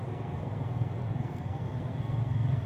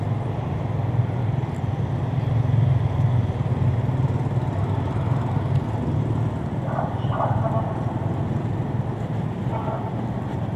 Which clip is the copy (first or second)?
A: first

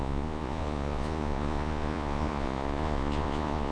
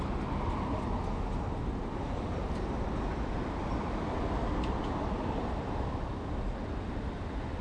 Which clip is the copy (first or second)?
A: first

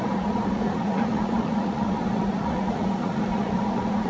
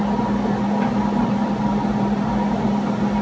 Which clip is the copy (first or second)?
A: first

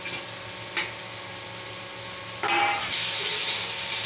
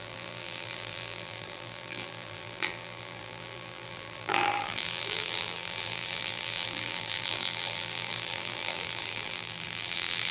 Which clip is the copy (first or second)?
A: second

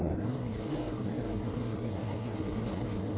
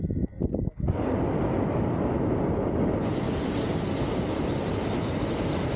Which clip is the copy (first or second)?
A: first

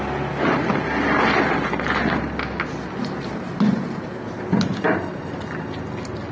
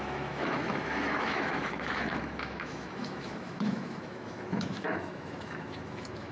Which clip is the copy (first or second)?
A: second